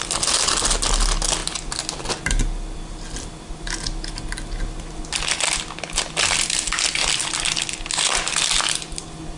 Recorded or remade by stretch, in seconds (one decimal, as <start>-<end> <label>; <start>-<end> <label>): 0.0-9.4 recorded